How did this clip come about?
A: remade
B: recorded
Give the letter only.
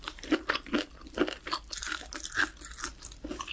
B